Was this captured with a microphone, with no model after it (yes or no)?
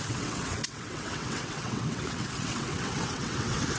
no